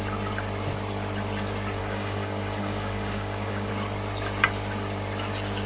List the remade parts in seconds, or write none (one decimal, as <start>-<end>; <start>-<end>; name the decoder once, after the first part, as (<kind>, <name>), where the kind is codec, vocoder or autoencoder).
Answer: 1.8-3.7 (codec, DAC)